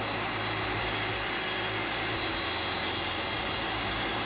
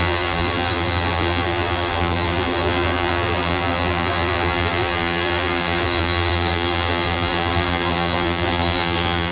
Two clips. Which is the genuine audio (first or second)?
first